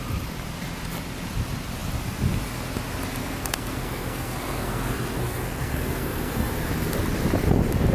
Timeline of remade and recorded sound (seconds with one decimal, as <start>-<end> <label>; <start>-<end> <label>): 0.0-3.2 recorded; 3.2-6.5 remade; 6.5-7.9 recorded